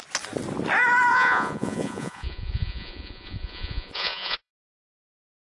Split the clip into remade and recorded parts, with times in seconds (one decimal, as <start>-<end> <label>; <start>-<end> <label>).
0.0-1.1 recorded; 1.1-4.5 remade; 4.5-5.6 recorded